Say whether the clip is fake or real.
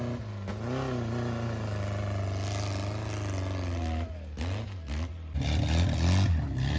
real